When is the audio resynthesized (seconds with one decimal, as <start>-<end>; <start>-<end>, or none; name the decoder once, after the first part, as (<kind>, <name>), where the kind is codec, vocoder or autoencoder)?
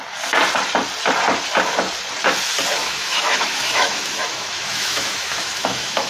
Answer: 2.8-6.1 (autoencoder, DAC-VAE)